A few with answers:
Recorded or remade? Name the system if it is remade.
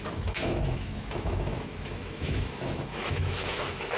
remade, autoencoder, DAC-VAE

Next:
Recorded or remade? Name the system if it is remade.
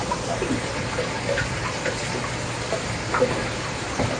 recorded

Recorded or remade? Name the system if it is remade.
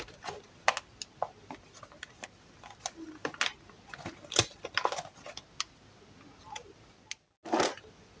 recorded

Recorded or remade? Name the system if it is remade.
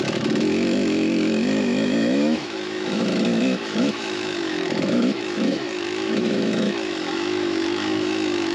remade, autoencoder, DAC-VAE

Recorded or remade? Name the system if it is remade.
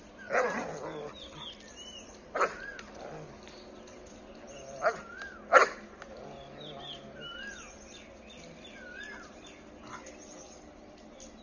recorded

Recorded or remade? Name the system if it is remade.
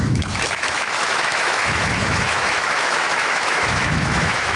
remade, autoencoder, DAC-VAE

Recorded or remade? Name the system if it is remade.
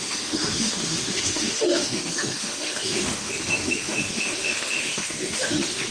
remade, autoencoder, DAC-VAE